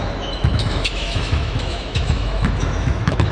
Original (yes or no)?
no